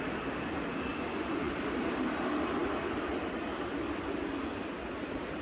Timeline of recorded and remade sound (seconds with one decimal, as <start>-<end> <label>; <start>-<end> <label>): 0.0-0.9 recorded; 0.9-1.5 remade; 1.5-5.4 recorded